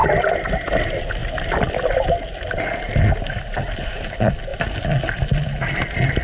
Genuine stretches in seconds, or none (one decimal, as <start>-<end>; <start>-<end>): 0.0-6.2